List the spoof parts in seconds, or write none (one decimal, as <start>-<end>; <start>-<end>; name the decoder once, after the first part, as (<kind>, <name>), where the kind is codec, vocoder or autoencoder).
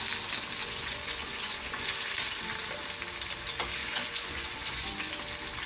0.6-1.9 (vocoder, Vocos); 3.8-5.1